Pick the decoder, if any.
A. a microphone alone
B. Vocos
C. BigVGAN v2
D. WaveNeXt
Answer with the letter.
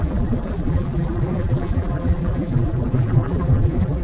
C